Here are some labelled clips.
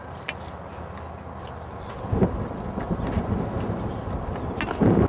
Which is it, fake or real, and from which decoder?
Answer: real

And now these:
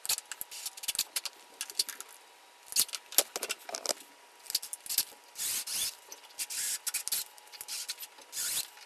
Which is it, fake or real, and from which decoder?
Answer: real